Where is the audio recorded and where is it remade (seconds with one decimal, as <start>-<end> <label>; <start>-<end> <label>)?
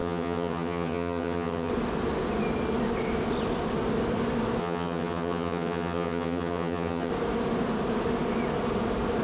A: 0.0-1.7 remade; 1.7-4.6 recorded; 4.6-7.1 remade; 7.1-9.2 recorded